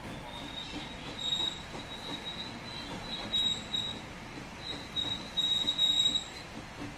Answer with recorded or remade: recorded